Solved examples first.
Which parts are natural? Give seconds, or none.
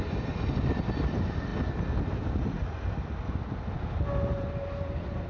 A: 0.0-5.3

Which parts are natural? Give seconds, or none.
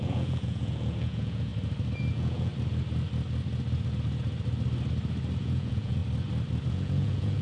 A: 1.5-2.1; 2.5-5.4; 6.0-6.7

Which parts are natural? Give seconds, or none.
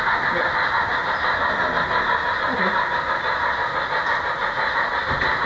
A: 0.0-4.4; 5.0-5.5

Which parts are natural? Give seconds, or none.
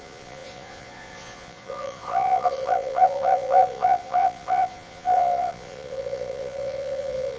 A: none